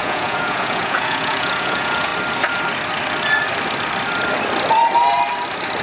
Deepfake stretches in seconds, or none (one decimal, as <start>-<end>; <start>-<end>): 0.0-2.1